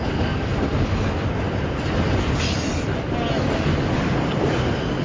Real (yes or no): yes